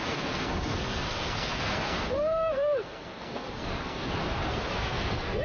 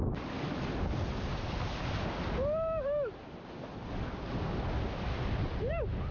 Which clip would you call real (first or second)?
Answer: second